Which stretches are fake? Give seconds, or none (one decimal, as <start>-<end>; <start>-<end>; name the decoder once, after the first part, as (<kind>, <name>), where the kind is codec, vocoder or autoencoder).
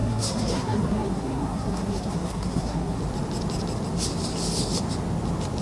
0.0-3.0 (codec, SNAC)